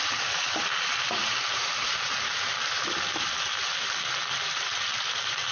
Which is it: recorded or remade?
recorded